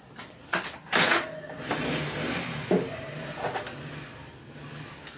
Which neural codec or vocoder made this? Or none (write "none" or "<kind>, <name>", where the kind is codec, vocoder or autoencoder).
none